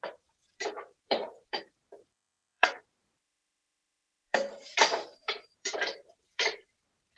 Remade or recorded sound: remade